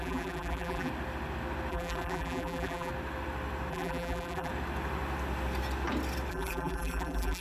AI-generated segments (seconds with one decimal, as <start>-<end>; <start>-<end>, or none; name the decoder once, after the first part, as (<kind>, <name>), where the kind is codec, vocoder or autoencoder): 0.0-0.9 (vocoder, BigVGAN v2); 1.7-2.9; 3.7-4.5; 6.3-7.4